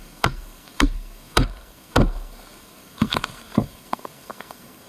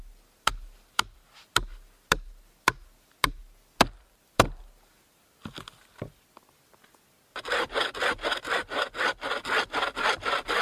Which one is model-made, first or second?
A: first